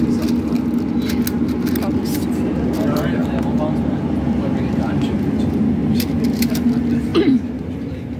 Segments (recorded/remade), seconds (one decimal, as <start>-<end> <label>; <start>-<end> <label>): 0.0-8.2 recorded